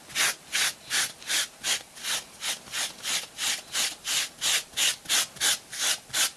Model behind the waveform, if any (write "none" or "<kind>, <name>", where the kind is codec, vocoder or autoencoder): none